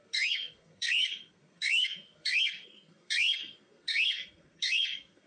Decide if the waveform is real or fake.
fake